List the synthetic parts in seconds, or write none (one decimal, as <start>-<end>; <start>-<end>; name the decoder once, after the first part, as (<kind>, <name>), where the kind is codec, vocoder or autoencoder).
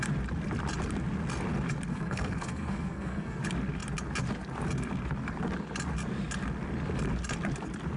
1.9-3.4 (codec, SNAC)